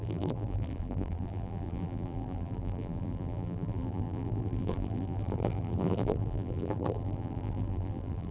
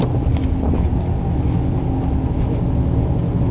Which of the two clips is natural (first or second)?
second